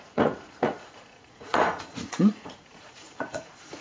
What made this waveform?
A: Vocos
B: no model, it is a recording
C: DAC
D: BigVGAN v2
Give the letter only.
A